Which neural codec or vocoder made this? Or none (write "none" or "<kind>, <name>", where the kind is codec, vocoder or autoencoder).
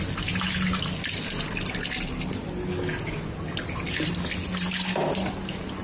none